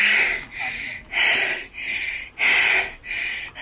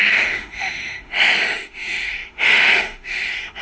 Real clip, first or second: first